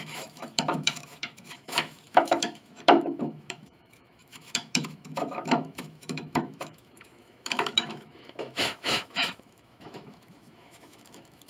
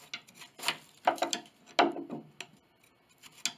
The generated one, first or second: first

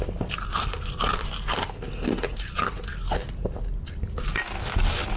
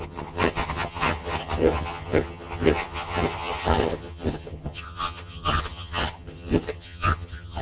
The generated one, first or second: second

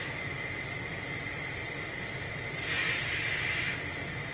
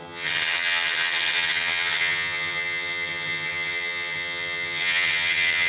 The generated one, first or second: second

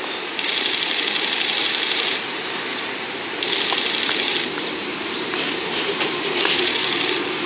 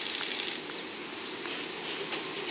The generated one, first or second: first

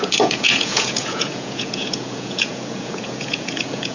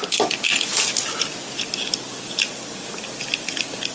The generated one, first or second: first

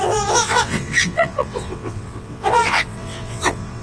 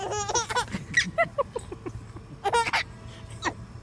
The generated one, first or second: first